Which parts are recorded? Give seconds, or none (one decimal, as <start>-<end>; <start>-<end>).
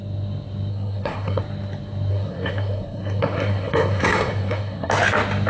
0.0-0.7; 1.4-2.1; 4.9-5.5